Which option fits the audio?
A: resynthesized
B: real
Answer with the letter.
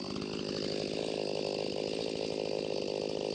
B